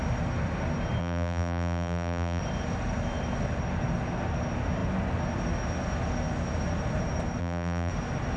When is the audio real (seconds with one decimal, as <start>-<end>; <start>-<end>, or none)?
0.0-1.0; 2.4-7.4; 7.9-8.4